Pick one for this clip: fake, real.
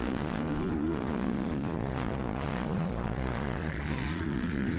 fake